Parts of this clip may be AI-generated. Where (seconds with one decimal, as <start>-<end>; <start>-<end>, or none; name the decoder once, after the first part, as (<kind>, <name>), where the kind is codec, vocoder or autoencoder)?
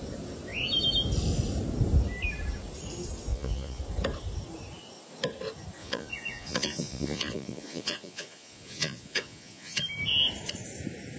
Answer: 3.3-3.8 (vocoder, Vocos); 5.8-9.8